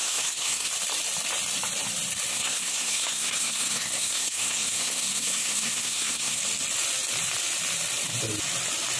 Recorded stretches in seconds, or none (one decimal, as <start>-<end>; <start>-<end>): 0.7-2.3; 6.4-9.0